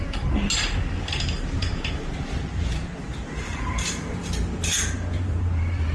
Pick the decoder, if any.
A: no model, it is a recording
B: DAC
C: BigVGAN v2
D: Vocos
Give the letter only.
C